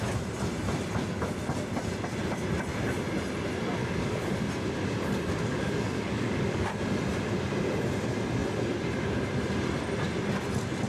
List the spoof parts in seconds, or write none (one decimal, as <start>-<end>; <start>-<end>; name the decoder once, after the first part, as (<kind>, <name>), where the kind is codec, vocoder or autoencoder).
3.8-4.4 (codec, DAC); 5.5-6.7

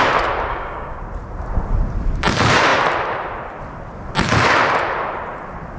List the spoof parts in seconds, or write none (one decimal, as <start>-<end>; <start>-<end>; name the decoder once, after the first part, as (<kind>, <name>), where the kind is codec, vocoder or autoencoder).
0.5-1.0 (codec, DAC)

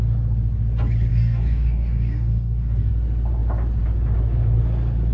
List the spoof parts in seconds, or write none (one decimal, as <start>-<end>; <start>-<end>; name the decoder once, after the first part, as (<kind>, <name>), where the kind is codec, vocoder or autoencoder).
1.1-2.9 (codec, DAC)

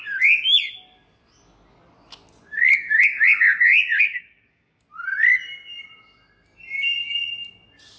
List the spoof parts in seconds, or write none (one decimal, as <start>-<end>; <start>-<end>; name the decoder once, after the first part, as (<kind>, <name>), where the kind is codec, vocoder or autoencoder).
4.1-4.8 (codec, DAC)